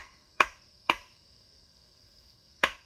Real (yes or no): no